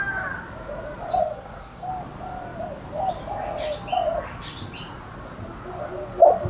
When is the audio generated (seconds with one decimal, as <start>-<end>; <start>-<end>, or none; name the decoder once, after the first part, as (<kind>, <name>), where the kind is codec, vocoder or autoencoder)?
1.2-1.9 (codec, SNAC)